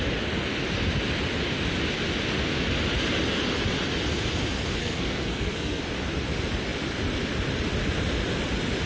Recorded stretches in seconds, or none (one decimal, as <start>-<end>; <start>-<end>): 0.0-4.8; 5.8-8.9